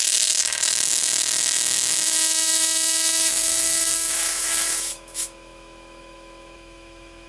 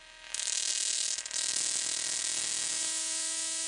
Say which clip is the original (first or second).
second